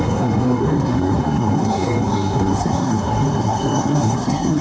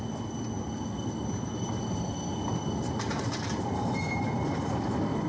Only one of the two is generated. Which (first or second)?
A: first